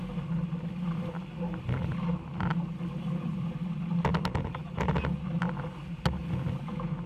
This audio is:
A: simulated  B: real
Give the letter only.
B